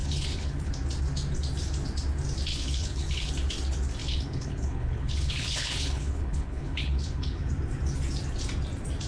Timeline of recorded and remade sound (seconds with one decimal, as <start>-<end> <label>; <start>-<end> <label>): 0.0-0.7 remade; 0.7-2.5 recorded; 2.5-3.3 remade; 3.3-4.0 recorded; 4.0-7.5 remade; 7.5-9.1 recorded